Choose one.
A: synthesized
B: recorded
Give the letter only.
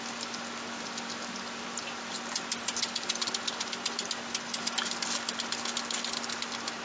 B